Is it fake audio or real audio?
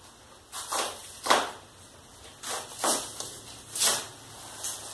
real